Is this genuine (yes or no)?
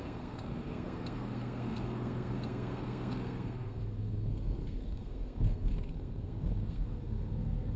no